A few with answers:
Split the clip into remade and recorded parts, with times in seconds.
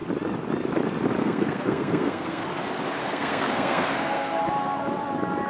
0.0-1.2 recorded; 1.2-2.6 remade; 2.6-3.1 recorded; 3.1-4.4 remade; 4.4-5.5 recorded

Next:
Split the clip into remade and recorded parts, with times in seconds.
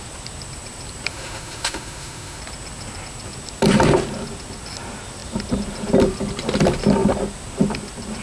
0.0-1.1 recorded; 1.1-2.4 remade; 2.4-8.2 recorded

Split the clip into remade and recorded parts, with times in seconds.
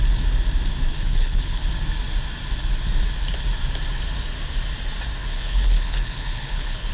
0.0-0.9 recorded; 0.9-1.7 remade; 1.7-5.2 recorded; 5.2-6.9 remade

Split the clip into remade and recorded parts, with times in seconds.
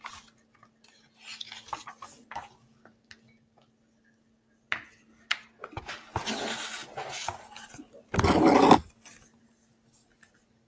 0.0-10.7 recorded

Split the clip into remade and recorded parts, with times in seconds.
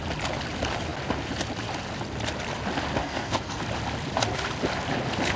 0.0-3.0 recorded; 3.0-3.6 remade; 3.6-5.4 recorded